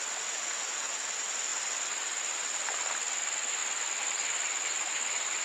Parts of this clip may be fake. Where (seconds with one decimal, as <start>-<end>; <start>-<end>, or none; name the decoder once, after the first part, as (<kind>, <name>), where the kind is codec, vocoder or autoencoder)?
none